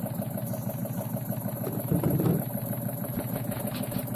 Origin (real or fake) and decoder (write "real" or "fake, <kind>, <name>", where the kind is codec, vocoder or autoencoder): real